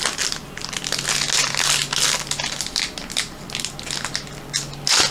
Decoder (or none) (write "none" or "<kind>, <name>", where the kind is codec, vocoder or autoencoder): none